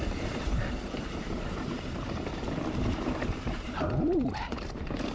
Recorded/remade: remade